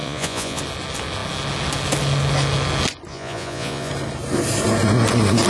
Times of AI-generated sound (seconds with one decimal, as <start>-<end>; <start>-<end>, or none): 0.0-0.6; 3.1-3.9